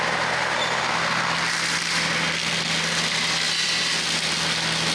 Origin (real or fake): real